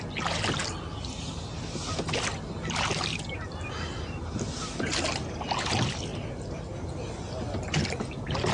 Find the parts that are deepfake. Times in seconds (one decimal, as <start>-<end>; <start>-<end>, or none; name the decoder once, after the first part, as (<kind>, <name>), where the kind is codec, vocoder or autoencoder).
none